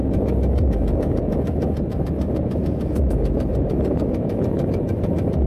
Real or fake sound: fake